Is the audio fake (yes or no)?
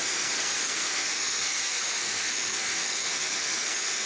yes